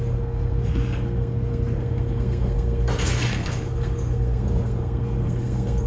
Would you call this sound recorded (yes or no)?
no